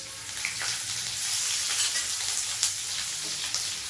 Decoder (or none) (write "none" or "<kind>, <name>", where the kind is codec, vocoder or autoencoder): none